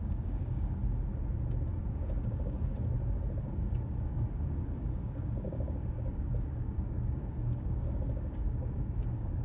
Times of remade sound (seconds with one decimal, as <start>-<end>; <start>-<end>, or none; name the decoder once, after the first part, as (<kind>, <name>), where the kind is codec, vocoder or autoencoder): 0.0-0.8 (codec, DAC); 1.8-2.7; 3.4-9.4